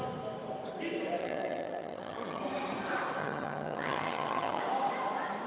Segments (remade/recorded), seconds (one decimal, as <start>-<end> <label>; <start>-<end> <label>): 0.0-1.2 recorded; 1.2-2.4 remade; 2.4-3.2 recorded; 3.2-4.6 remade; 4.6-5.5 recorded